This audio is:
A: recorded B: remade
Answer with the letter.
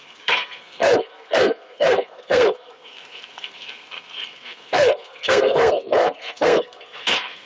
B